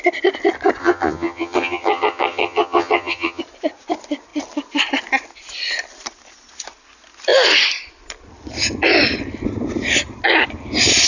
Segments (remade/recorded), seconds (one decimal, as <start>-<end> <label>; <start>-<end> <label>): 0.0-0.8 recorded; 0.8-3.4 remade; 3.4-11.1 recorded